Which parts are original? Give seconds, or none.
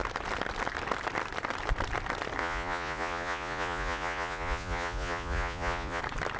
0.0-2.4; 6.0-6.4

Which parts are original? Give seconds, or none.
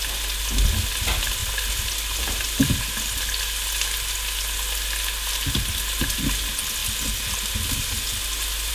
0.0-1.4; 2.8-8.7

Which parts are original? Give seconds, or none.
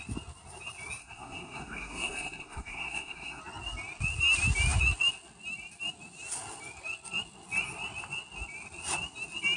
0.0-1.0; 3.4-9.6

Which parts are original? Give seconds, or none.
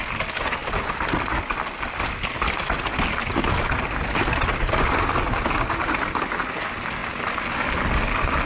0.0-8.5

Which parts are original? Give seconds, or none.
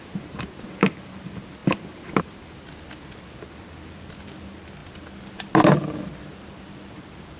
0.0-7.4